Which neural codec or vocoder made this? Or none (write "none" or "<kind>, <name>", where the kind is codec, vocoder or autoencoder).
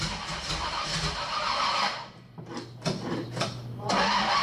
none